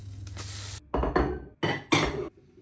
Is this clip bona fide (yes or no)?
yes